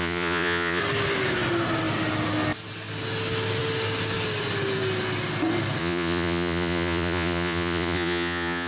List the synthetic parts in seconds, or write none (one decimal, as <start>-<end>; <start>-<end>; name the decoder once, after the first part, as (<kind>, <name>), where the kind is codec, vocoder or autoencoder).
0.0-0.8 (vocoder, Vocos); 5.8-8.7